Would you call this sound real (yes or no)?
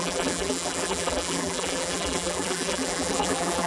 no